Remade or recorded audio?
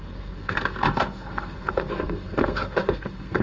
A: remade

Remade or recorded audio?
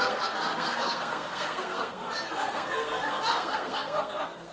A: remade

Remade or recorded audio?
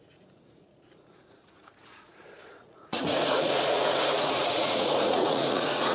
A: remade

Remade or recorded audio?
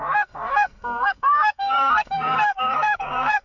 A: remade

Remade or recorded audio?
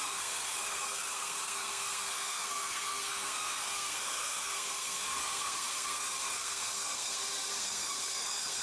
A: remade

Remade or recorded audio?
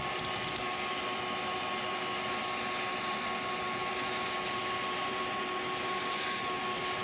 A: recorded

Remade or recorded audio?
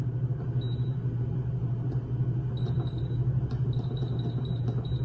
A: recorded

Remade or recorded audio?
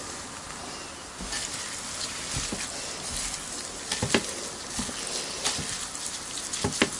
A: recorded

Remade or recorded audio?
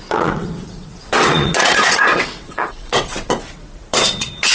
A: remade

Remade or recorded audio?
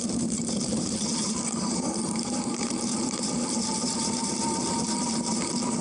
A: remade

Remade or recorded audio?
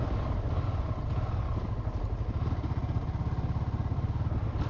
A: recorded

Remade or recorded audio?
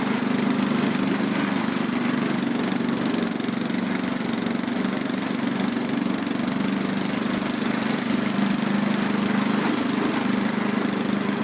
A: recorded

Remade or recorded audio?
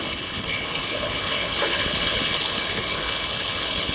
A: remade